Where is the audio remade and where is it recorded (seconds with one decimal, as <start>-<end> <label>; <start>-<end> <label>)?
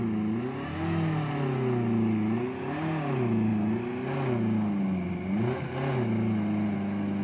0.0-7.2 recorded